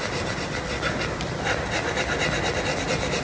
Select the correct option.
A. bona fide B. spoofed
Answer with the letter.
A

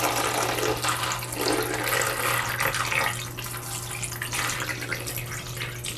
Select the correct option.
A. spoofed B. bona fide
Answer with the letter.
B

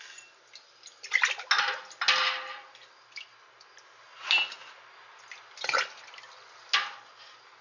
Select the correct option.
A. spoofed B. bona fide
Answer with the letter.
B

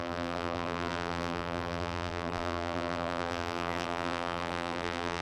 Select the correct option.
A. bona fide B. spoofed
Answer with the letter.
B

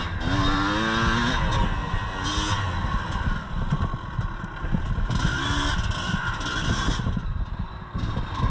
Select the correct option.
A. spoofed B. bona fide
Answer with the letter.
B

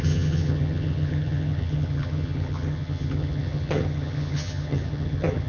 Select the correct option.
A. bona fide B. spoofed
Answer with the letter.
B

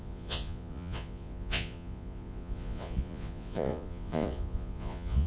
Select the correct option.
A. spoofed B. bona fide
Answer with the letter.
A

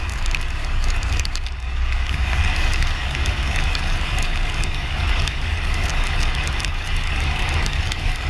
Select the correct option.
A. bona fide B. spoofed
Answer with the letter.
B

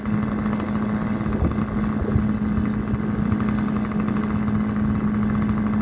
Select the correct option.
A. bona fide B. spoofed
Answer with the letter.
A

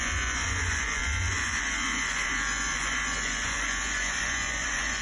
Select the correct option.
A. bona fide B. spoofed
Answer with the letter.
B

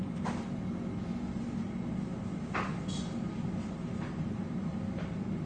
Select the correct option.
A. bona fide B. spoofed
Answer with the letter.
A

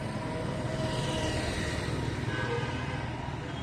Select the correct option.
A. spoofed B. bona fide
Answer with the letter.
B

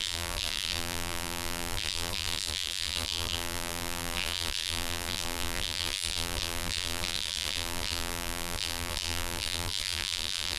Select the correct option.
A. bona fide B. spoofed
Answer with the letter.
B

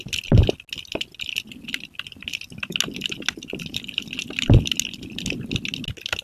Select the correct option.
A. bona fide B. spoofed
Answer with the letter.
A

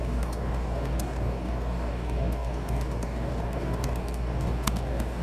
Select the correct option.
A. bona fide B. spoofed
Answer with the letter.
B